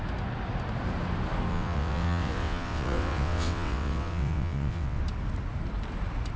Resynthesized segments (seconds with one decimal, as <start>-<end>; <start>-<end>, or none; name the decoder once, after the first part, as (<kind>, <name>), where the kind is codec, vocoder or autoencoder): 1.5-5.0 (vocoder, WaveNeXt)